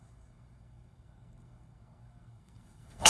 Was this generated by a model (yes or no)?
yes